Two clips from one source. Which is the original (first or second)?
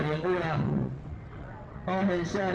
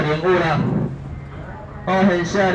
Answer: second